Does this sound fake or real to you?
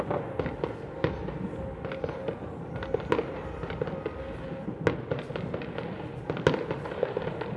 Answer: real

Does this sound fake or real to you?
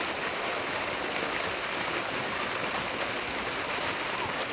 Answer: real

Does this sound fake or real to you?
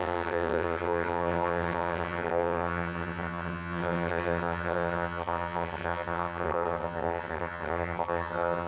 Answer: fake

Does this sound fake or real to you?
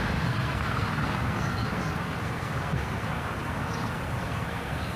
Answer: fake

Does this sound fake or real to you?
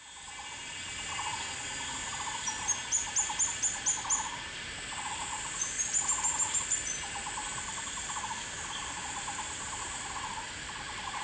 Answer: real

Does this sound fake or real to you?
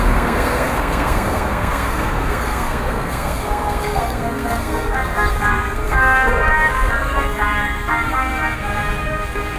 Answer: fake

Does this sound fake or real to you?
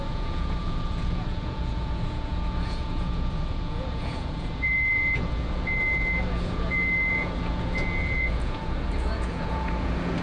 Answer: fake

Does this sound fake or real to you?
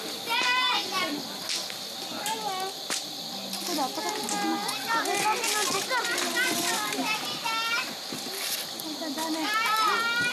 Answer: real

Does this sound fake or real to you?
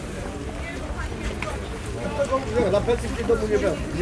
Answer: real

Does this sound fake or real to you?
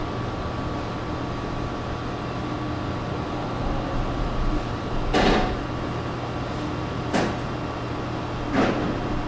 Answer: real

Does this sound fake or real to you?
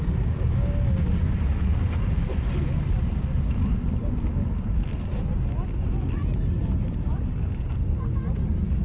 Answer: real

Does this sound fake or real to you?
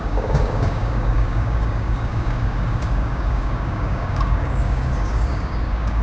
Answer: fake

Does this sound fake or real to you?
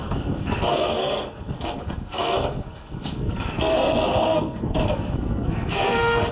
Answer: fake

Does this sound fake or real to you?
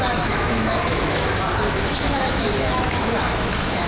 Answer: fake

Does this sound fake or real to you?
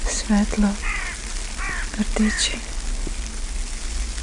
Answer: real